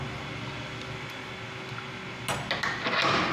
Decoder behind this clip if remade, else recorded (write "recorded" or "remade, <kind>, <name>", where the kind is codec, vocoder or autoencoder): recorded